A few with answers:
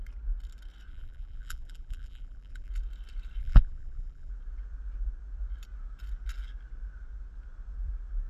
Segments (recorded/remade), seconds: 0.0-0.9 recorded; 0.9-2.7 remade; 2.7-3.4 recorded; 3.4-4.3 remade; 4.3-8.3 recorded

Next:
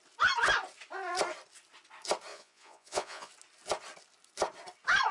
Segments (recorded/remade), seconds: 0.0-2.3 recorded; 2.3-3.3 remade; 3.3-5.1 recorded

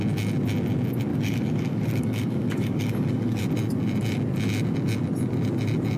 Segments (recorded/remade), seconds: 0.0-1.1 recorded; 1.1-3.4 remade; 3.4-6.0 recorded